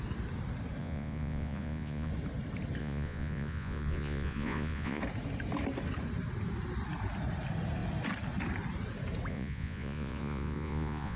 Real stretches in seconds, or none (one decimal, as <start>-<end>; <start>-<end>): 0.0-0.8; 2.1-2.8; 5.0-9.3